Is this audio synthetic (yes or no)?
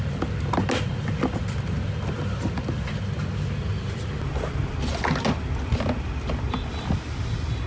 no